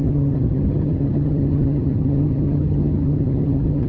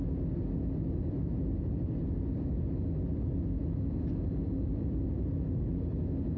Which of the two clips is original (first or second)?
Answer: second